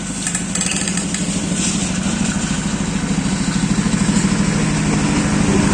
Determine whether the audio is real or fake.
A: real